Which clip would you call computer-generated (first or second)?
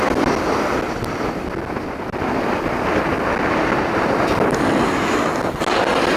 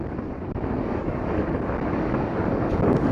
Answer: second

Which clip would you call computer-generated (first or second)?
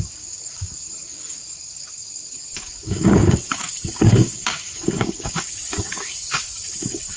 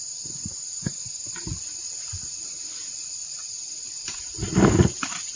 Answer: first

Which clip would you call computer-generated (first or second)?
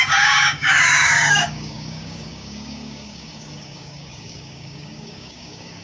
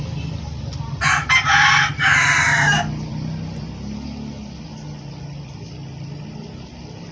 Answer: first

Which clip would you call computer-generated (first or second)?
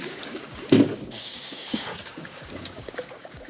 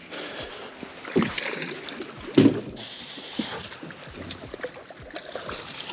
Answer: first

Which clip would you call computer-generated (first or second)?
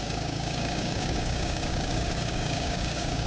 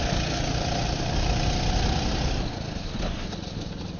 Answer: first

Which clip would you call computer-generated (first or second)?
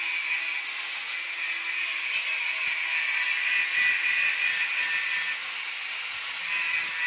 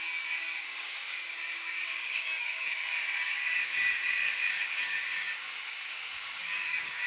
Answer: second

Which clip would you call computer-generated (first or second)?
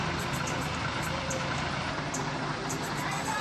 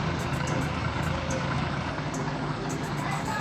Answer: second